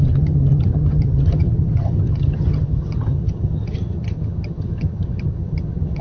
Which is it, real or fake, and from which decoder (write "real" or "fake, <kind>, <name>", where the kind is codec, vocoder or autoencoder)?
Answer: fake, vocoder, HiFi-GAN